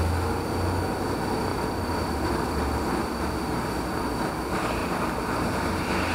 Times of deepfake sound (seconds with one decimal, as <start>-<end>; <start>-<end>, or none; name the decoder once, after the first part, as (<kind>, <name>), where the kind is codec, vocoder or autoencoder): 1.5-3.2 (vocoder, BigVGAN v2); 4.8-5.5